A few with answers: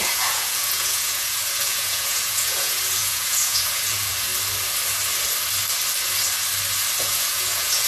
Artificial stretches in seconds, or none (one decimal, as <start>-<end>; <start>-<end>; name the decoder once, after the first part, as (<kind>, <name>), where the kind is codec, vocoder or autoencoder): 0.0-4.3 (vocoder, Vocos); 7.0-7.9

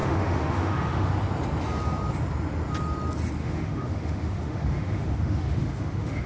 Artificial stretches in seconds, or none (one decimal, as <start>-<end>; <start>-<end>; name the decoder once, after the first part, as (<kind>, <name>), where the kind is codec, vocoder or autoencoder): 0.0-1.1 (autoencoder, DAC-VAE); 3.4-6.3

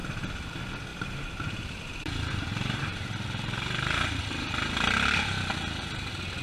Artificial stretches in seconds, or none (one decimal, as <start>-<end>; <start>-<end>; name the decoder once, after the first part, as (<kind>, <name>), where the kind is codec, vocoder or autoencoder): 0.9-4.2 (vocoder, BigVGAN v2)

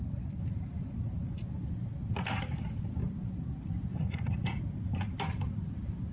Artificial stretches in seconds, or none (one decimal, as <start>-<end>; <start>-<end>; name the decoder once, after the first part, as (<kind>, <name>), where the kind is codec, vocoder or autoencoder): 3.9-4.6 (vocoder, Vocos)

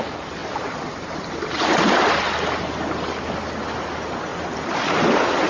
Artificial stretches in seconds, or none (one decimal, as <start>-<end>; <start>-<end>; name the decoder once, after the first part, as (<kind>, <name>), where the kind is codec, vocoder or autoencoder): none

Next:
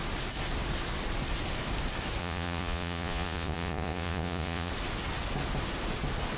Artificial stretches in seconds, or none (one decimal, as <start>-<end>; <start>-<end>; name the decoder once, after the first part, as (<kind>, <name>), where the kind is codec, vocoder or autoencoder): 2.2-4.7 (vocoder, Vocos)

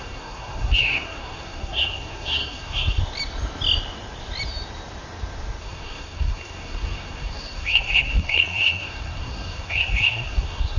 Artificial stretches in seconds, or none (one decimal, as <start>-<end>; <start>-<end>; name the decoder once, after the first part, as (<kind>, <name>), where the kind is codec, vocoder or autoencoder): 0.0-3.0 (codec, SNAC); 5.6-10.8